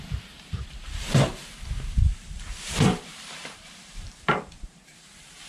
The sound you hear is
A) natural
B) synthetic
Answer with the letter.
B